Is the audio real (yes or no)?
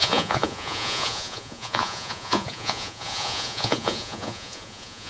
no